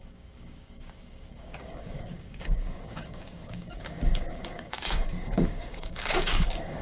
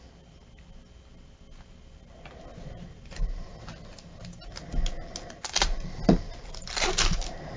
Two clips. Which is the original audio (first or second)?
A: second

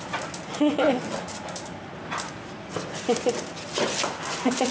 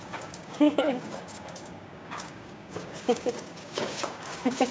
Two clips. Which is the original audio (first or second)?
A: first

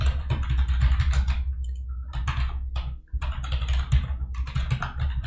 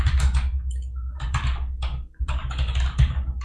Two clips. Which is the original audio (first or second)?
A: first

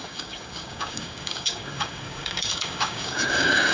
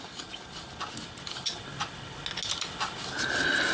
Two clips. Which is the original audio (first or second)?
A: second